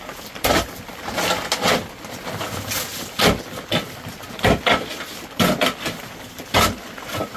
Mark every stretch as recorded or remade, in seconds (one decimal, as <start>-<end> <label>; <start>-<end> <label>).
0.0-7.4 recorded